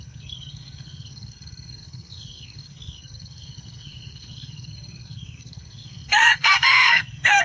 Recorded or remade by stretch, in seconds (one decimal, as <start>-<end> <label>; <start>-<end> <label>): 0.0-7.4 remade